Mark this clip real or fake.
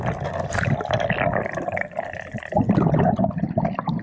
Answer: real